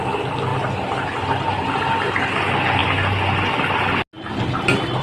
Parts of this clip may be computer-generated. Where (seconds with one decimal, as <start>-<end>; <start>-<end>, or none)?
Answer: none

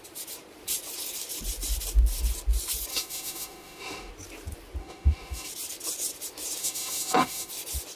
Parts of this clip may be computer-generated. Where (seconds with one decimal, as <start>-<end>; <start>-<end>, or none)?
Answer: 2.9-4.1; 4.8-5.5; 6.6-7.5

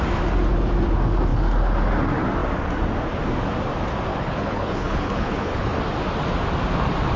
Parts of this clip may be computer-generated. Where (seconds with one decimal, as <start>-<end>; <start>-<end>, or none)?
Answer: 4.1-5.8

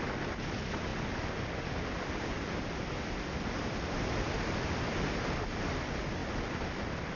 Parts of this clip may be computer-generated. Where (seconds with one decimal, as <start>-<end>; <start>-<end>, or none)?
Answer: none

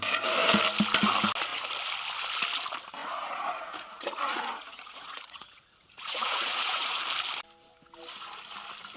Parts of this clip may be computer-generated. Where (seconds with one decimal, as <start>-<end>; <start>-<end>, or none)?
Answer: 3.0-7.0

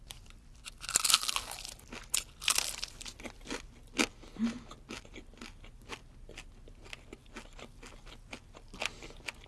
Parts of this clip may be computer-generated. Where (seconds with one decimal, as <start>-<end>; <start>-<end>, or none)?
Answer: none